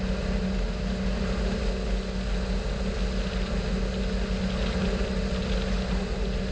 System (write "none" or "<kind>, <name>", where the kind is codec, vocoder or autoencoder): none